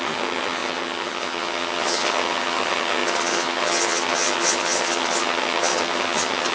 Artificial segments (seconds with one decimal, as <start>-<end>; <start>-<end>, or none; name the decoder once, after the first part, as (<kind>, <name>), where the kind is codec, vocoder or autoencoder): 0.0-6.5 (vocoder, HiFi-GAN)